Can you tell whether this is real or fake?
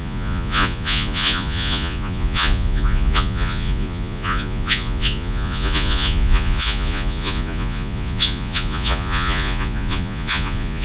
fake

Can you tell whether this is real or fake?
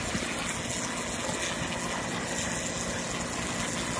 real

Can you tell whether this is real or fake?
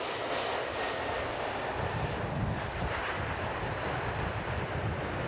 real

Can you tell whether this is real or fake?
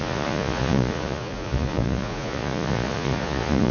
fake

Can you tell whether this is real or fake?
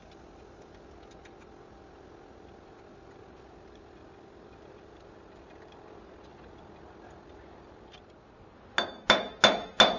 real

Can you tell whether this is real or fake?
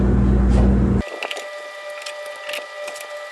real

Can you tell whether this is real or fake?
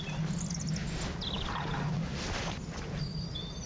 real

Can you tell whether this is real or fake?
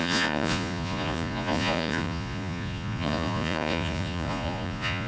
fake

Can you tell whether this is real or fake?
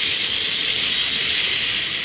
real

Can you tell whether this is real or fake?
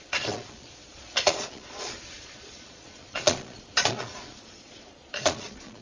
fake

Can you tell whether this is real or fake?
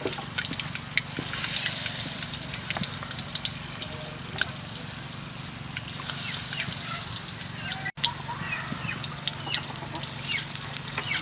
real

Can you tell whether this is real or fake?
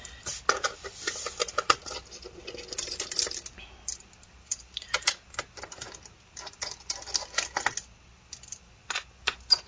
real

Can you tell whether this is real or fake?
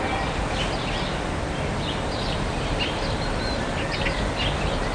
real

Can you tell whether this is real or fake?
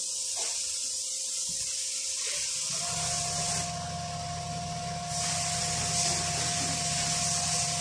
real